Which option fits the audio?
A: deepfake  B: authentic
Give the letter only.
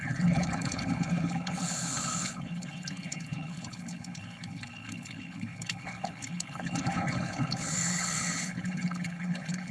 A